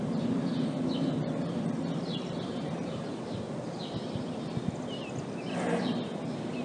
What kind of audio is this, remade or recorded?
remade